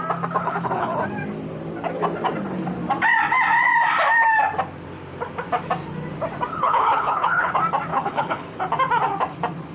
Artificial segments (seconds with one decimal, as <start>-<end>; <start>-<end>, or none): 0.4-1.0; 6.5-7.5; 7.9-8.6